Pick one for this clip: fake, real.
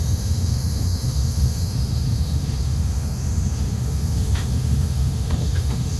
fake